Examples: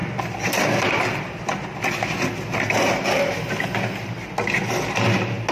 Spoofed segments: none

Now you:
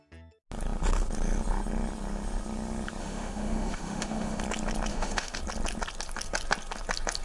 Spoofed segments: 3.0-4.4 (autoencoder, DAC-VAE); 4.9-5.4

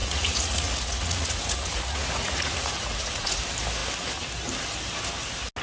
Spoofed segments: 0.0-3.4 (vocoder, Vocos)

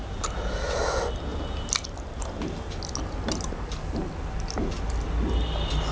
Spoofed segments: none